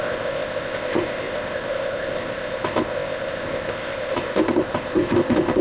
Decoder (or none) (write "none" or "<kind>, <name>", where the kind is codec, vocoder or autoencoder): codec, ZipCodec